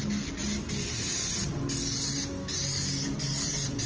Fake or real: real